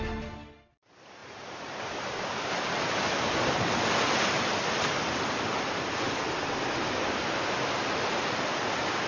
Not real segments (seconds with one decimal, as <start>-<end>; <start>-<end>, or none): 1.2-3.4

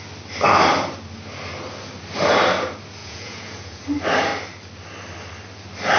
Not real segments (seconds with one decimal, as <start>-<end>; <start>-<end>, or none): 3.0-3.8

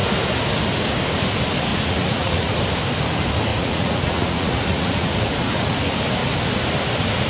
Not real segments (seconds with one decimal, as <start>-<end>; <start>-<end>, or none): 1.7-2.6; 3.5-5.8

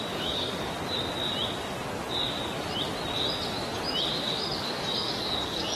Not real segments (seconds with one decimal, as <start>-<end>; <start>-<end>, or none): 0.0-0.7; 4.2-5.8

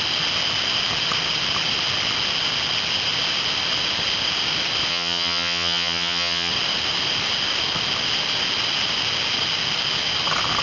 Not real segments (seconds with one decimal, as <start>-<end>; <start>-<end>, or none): 4.9-6.5

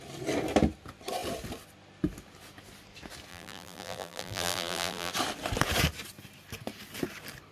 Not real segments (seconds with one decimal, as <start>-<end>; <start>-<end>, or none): 3.3-5.1